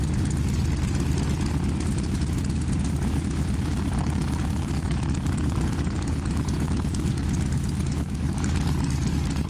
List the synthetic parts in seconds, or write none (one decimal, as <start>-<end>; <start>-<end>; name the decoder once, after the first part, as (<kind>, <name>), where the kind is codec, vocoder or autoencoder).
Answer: 3.9-9.5 (codec, DAC)